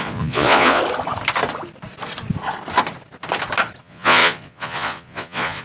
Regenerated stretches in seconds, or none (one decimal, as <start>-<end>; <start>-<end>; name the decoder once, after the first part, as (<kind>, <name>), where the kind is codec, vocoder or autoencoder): 0.0-0.8 (vocoder, Vocos); 3.8-5.6